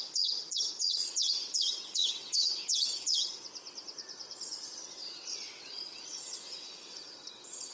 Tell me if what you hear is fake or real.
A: fake